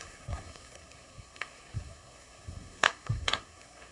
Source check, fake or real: fake